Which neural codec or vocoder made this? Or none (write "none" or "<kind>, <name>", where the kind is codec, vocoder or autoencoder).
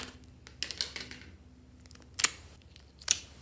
none